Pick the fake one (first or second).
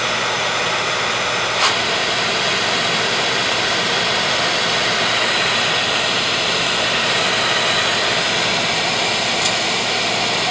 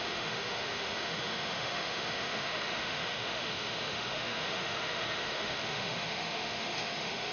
second